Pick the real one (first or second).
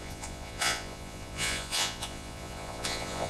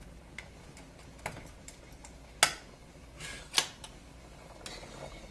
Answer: second